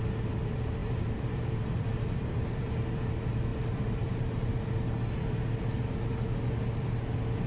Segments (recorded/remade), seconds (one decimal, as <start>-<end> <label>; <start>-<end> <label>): 0.0-0.8 recorded; 0.8-2.9 remade; 2.9-3.5 recorded; 3.5-4.5 remade; 4.5-7.5 recorded